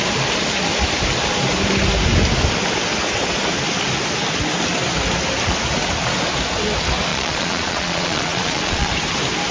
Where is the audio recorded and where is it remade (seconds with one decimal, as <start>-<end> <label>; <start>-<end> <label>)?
0.0-7.1 recorded; 7.1-8.9 remade; 8.9-9.5 recorded